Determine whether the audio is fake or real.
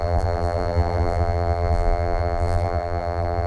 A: fake